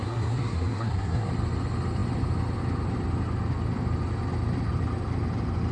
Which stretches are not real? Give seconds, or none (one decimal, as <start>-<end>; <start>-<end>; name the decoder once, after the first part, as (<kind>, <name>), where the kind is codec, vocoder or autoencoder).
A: 0.0-1.3 (codec, SNAC)